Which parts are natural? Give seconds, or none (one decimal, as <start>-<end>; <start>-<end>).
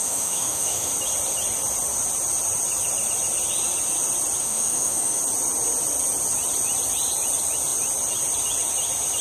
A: 0.9-4.4; 5.2-9.2